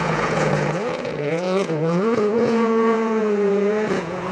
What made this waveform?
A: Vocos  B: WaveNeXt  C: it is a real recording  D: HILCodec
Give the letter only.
A